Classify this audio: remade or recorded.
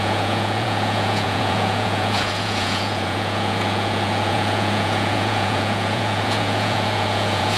remade